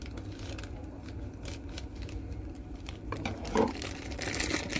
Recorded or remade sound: recorded